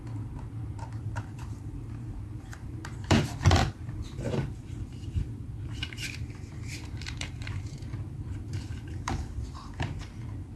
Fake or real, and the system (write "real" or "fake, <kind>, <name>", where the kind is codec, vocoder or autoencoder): fake, vocoder, BigVGAN v2